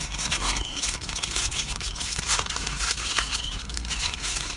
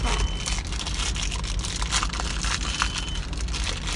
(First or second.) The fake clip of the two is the first